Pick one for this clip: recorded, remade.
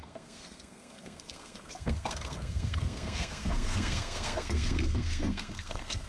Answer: remade